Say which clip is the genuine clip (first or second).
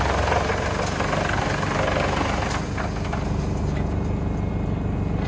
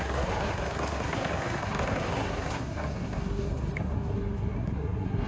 first